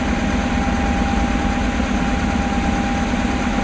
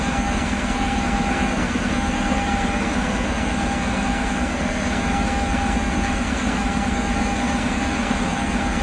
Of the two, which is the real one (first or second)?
first